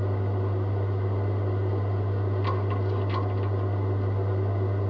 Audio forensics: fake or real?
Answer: real